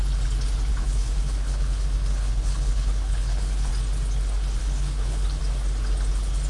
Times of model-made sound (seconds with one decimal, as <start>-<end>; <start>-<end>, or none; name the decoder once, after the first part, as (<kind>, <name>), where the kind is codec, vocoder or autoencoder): 0.7-3.7 (codec, HILCodec); 4.6-5.4